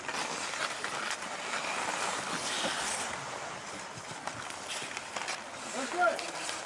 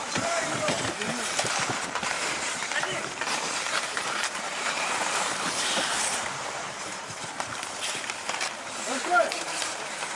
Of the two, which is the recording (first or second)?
first